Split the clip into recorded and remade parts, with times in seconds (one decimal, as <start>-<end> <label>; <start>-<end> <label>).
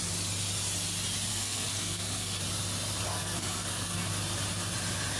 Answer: 0.0-1.3 recorded; 1.3-2.4 remade; 2.4-3.1 recorded; 3.1-4.1 remade; 4.1-5.2 recorded